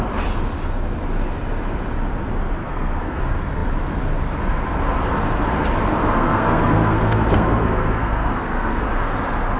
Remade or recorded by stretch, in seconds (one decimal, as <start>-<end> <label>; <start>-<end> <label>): 0.0-2.6 recorded; 2.6-3.2 remade; 3.2-6.0 recorded; 6.0-8.9 remade; 8.9-9.6 recorded